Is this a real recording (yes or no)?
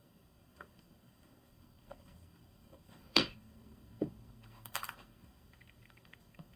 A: no